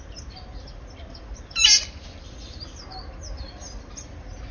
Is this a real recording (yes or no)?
yes